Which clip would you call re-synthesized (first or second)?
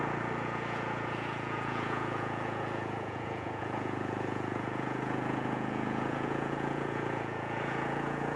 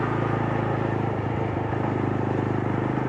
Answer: first